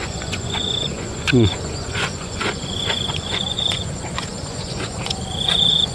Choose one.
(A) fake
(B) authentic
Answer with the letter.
A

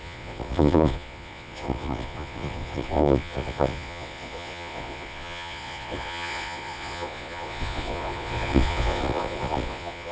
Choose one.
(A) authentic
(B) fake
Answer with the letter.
B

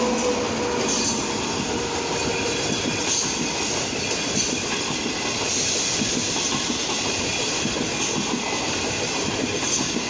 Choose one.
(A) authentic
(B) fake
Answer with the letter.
A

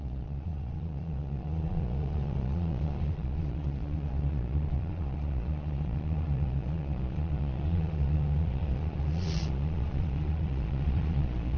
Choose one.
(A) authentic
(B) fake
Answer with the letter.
B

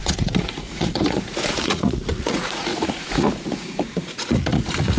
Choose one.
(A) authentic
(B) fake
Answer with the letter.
B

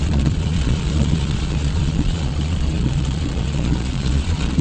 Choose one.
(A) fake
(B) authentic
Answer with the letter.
A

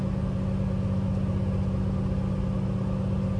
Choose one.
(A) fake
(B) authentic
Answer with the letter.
B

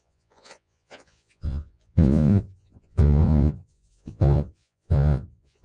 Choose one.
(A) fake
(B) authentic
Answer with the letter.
A